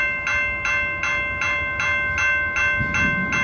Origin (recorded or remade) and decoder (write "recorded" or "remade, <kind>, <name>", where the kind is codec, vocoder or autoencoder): recorded